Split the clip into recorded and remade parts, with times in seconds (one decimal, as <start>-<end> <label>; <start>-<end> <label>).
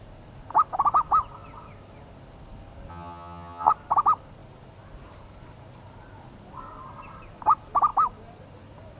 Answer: 0.0-2.9 recorded; 2.9-3.7 remade; 3.7-9.0 recorded